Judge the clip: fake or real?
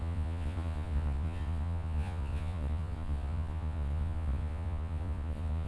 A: fake